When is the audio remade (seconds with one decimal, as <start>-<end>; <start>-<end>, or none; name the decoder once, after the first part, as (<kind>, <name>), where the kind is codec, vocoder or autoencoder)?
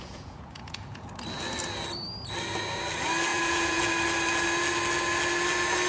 0.0-1.1 (vocoder, Vocos); 3.3-3.9